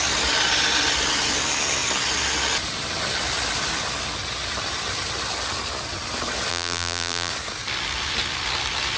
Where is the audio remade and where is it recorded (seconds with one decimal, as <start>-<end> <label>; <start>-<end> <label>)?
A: 0.0-6.5 recorded; 6.5-7.3 remade; 7.3-9.0 recorded